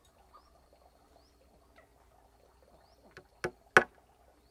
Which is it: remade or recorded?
recorded